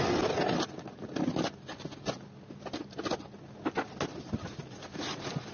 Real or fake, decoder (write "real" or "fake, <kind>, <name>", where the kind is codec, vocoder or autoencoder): real